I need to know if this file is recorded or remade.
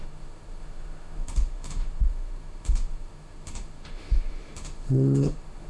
remade